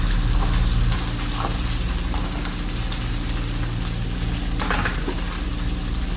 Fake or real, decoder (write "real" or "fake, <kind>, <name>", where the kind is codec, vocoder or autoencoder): real